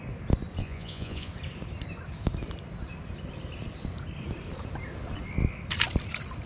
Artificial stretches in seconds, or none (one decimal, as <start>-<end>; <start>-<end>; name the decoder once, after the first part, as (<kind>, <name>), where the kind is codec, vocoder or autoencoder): 0.6-1.3 (vocoder, Vocos)